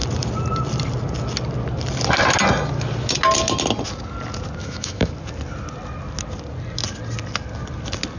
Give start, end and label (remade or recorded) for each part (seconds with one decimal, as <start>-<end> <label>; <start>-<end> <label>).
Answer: 0.0-4.6 recorded; 4.6-5.1 remade; 5.1-8.2 recorded